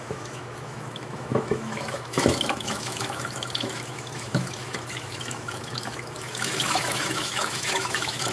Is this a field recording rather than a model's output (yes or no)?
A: no